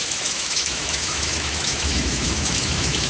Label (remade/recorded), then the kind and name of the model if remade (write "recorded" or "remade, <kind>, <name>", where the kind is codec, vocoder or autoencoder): remade, autoencoder, DAC-VAE